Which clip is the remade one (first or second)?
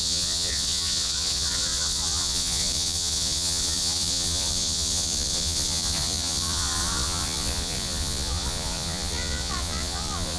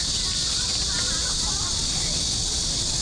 first